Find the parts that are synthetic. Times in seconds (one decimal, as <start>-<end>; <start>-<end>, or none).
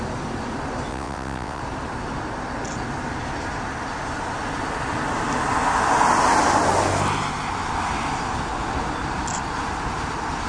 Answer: 0.9-1.6